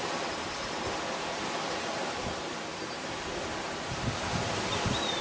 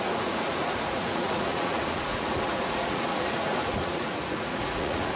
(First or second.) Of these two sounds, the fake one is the second